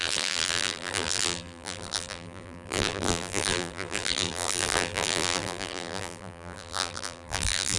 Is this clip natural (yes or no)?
no